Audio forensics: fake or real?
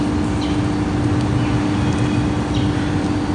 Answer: real